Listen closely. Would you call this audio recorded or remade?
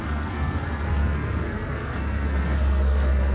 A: remade